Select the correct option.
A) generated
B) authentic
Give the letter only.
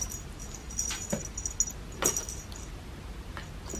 B